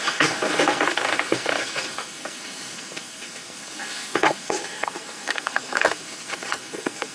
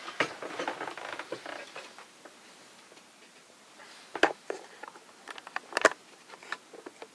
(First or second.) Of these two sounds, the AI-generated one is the first